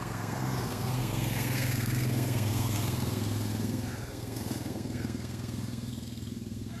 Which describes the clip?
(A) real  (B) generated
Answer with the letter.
B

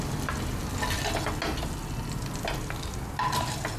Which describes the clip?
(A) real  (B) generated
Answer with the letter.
A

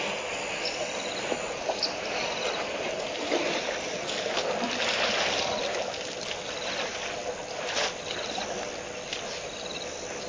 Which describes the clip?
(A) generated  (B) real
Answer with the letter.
B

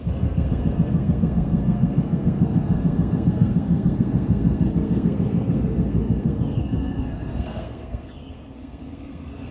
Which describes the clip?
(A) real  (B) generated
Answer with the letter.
B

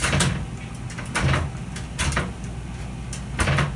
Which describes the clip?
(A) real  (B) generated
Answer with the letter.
A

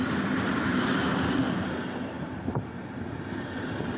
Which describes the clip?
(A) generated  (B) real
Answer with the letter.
B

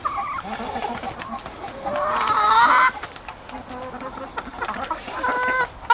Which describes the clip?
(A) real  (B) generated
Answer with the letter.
A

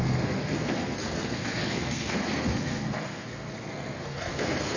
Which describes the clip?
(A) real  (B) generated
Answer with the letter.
B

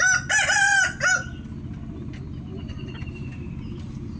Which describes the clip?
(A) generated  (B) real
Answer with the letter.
B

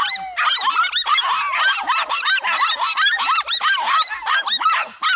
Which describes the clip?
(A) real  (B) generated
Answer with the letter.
A